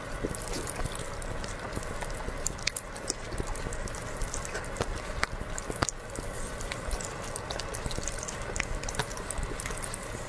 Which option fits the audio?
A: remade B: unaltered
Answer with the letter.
B